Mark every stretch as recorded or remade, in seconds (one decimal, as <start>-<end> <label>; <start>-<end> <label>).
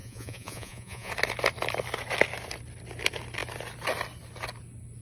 0.0-1.1 remade; 1.1-5.0 recorded